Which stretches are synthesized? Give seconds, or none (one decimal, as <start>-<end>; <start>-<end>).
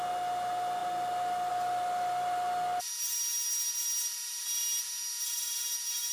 none